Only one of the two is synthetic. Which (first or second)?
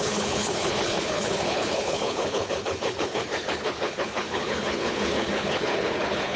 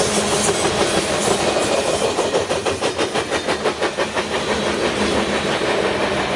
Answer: first